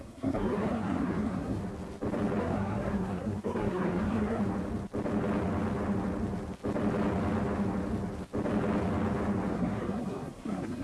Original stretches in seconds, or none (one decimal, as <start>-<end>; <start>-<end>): 1.6-2.4; 4.4-9.5